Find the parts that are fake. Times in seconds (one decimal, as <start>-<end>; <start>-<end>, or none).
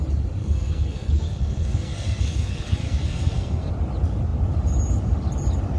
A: 0.4-3.7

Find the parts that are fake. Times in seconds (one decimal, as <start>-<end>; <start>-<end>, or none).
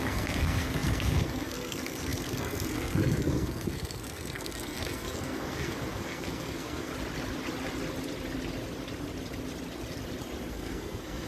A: 0.0-6.9; 10.5-11.3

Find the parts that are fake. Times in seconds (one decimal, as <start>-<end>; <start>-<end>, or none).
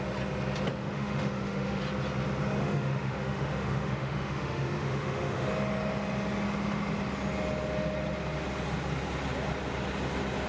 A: 0.8-1.8; 2.6-5.5